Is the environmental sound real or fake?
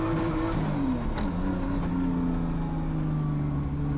real